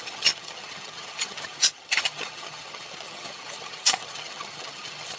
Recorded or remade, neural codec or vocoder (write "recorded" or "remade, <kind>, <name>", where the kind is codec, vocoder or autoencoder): remade, vocoder, HiFi-GAN